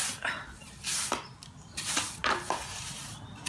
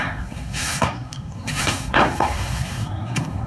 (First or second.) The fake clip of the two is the second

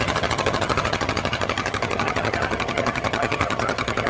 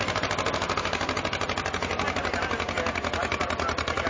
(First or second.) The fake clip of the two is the first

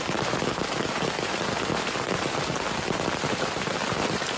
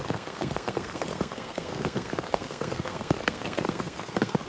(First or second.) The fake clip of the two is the second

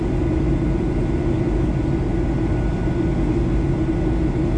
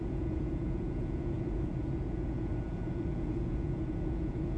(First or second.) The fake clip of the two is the second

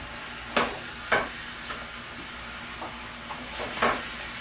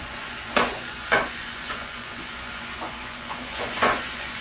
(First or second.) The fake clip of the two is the second